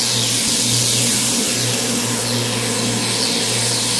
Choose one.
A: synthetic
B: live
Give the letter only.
B